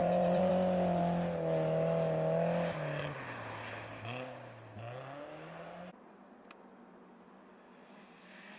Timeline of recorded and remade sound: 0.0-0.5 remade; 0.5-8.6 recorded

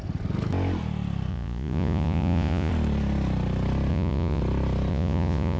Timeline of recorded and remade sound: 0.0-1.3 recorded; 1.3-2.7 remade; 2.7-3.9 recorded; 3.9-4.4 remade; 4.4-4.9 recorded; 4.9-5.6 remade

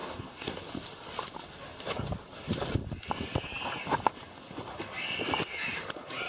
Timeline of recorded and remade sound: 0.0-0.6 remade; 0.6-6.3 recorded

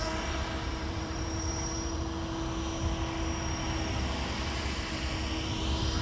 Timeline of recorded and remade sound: 0.0-0.7 recorded; 0.7-2.0 remade; 2.0-6.0 recorded

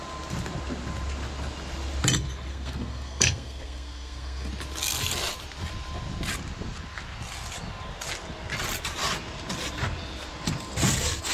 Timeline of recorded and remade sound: 0.0-2.5 recorded; 2.5-4.5 remade; 4.5-11.3 recorded

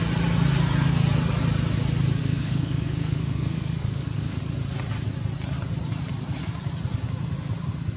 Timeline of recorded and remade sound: 0.0-2.2 recorded; 2.2-4.4 remade; 4.4-8.0 recorded

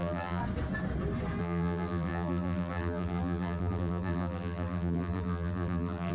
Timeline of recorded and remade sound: 0.0-0.4 remade; 0.4-1.4 recorded; 1.4-6.1 remade

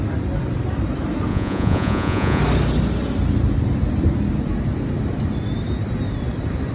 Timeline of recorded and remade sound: 0.0-1.3 recorded; 1.3-2.4 remade; 2.4-6.7 recorded